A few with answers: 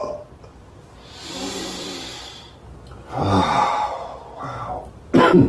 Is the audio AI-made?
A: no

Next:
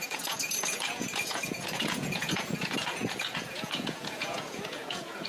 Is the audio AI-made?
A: yes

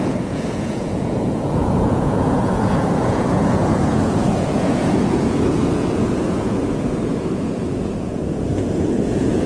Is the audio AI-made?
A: yes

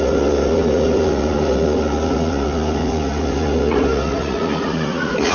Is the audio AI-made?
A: yes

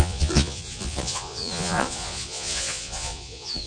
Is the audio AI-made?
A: yes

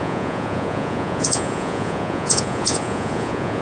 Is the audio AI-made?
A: yes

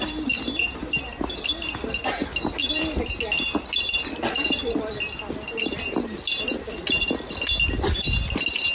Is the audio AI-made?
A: no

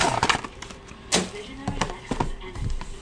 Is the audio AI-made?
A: no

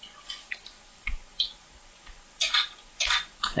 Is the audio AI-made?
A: yes